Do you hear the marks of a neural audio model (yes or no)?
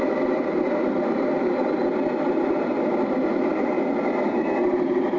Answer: no